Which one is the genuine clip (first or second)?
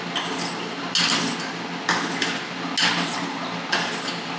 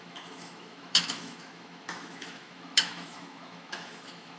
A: first